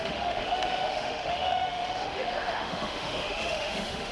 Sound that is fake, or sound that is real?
fake